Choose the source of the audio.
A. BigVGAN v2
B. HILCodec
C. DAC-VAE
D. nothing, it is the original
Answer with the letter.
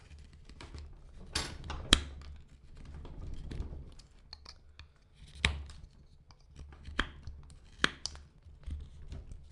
D